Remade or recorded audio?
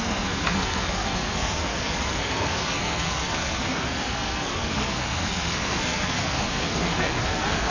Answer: remade